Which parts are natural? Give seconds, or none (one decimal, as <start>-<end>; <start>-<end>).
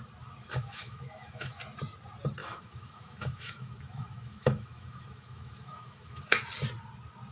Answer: 0.0-0.4; 1.6-2.4; 6.4-7.3